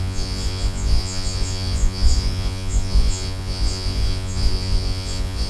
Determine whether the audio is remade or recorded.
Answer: remade